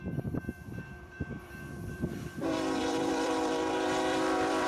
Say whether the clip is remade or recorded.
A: remade